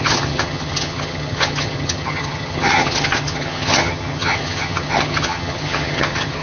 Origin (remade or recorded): remade